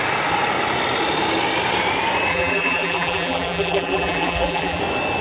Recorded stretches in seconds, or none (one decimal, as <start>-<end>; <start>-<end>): 0.0-2.3; 4.8-5.2